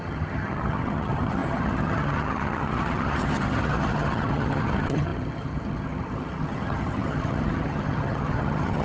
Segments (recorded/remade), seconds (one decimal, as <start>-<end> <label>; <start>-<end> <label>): 0.0-8.8 remade